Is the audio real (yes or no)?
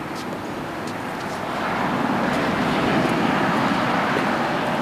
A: yes